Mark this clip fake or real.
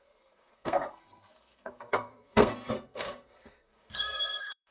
fake